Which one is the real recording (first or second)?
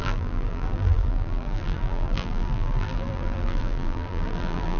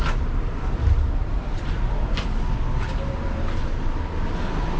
second